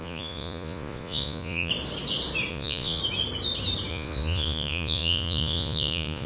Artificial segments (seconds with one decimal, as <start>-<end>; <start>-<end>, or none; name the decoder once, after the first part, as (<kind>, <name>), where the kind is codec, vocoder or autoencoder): 0.0-1.7 (vocoder, Vocos); 2.5-3.0; 3.9-6.3